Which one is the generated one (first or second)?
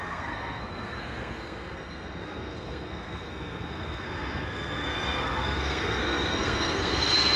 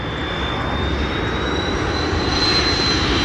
first